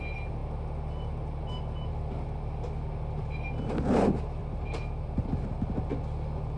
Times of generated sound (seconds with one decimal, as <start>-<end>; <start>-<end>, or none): 4.4-5.3